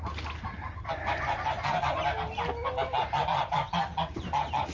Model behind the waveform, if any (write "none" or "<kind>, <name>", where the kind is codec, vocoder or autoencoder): none